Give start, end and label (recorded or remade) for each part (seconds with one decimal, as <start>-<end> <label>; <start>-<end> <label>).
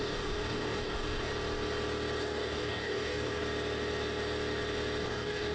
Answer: 0.0-1.3 remade; 1.3-2.2 recorded; 2.2-3.4 remade; 3.4-5.0 recorded; 5.0-5.5 remade